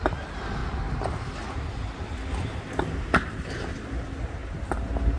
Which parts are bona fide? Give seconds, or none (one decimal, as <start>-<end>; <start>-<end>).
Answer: 0.0-5.2